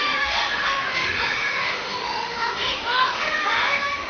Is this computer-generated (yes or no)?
yes